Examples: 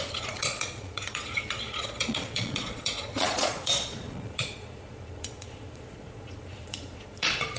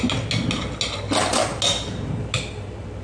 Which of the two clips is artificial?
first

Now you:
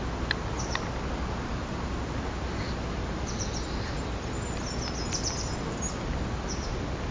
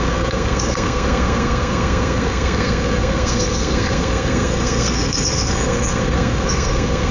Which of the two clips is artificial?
second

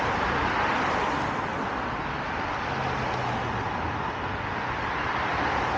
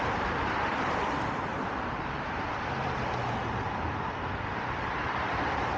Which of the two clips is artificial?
second